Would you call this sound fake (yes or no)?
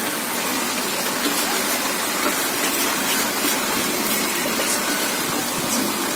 no